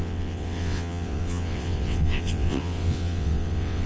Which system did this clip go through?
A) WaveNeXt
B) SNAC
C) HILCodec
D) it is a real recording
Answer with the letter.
A